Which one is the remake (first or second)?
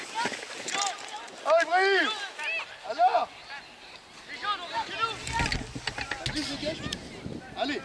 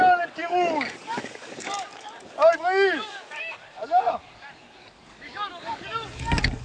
second